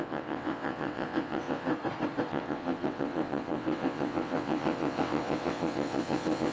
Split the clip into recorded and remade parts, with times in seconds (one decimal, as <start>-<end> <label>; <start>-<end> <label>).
0.0-1.7 remade; 1.7-2.3 recorded; 2.3-6.5 remade